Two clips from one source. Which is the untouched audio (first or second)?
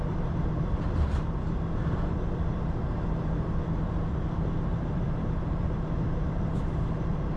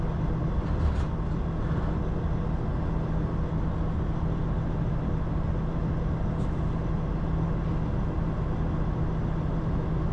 second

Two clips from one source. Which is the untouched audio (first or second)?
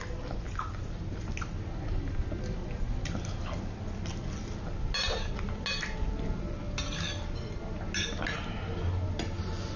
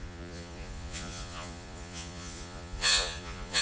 first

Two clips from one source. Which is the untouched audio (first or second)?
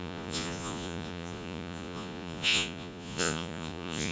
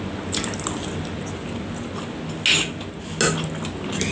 second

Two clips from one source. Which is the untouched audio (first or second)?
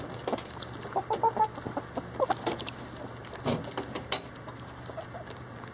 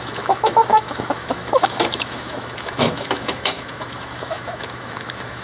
first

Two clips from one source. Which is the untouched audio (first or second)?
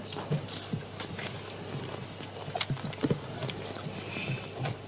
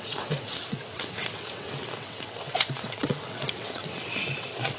first